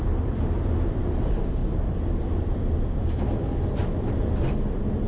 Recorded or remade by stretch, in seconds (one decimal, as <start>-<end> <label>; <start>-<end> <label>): 0.0-5.1 recorded